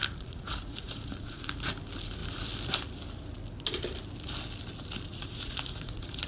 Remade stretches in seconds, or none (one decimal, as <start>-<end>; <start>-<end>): 0.0-1.6; 5.1-6.3